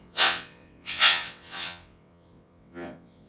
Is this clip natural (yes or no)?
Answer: no